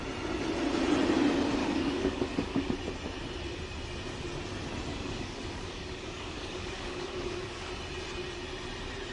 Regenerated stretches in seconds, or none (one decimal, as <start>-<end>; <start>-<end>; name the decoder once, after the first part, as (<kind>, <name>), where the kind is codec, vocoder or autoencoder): 1.6-2.7 (codec, DAC); 4.9-7.7